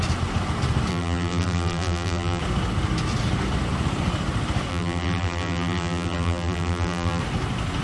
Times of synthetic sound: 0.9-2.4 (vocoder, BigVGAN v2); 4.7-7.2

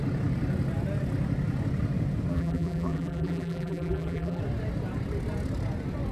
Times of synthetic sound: 2.3-4.4 (vocoder, BigVGAN v2)

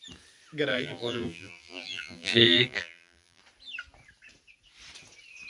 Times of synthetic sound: 0.7-3.4 (vocoder, BigVGAN v2)

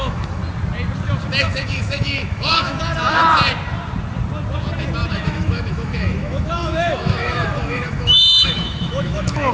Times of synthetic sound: 0.0-0.4 (autoencoder, DAC-VAE); 1.4-2.8; 5.1-9.5

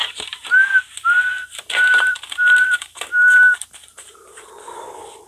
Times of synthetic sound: 0.0-0.7 (vocoder, BigVGAN v2); 1.3-4.5

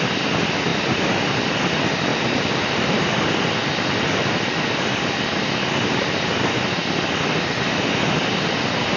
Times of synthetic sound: 2.1-3.0 (vocoder, BigVGAN v2); 3.6-4.7

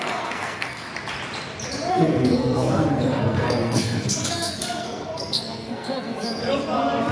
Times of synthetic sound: 0.0-0.9 (codec, SNAC); 1.9-6.4